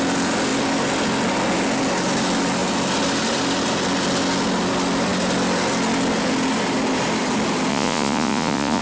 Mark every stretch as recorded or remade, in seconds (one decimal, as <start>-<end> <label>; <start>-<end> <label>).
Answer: 0.0-7.7 recorded; 7.7-8.8 remade